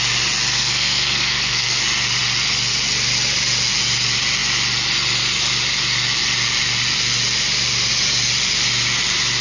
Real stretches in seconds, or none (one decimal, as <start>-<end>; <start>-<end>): 0.0-0.5; 1.8-9.4